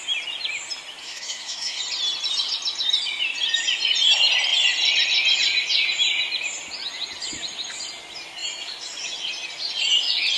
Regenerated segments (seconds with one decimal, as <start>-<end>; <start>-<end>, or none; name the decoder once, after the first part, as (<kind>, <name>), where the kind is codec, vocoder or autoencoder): 1.0-1.8 (codec, SNAC)